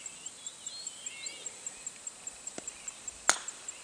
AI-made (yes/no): no